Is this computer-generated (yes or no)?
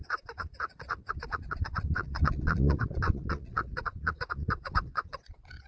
yes